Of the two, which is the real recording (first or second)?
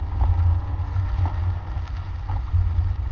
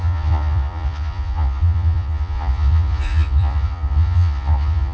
first